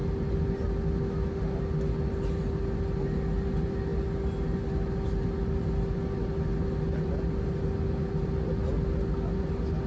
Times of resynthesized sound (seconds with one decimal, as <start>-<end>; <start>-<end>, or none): none

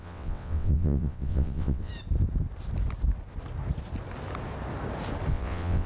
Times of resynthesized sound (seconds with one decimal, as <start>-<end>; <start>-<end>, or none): 0.0-1.9; 5.3-5.9

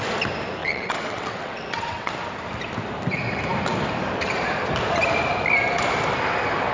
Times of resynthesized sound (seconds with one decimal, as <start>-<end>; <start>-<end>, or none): 0.6-2.1